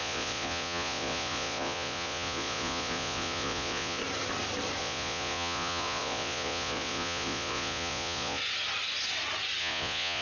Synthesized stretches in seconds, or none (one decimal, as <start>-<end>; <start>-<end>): 0.0-4.0; 4.8-8.4; 9.6-10.2